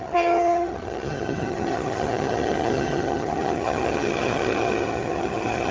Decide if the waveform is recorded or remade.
remade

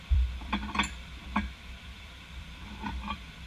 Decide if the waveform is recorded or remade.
remade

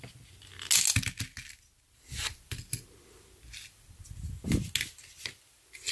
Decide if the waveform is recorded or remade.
recorded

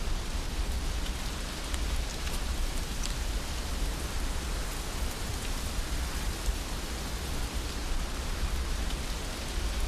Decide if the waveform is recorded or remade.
recorded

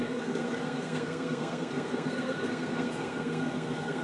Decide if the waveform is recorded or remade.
remade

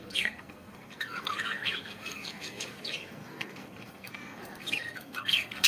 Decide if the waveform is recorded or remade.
remade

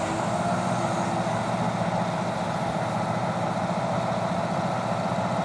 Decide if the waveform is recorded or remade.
recorded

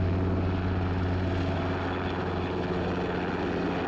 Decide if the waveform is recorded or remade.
recorded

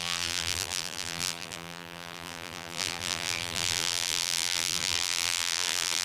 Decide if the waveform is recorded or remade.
remade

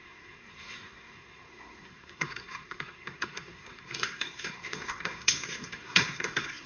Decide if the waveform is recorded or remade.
remade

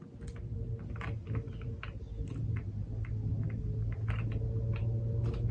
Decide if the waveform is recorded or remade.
recorded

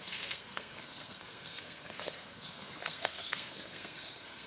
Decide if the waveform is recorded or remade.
remade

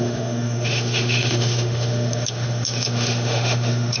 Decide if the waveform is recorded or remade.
remade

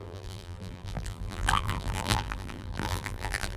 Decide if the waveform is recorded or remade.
remade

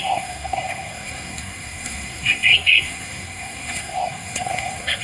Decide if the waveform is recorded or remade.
remade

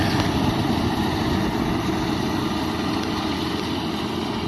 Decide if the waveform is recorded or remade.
recorded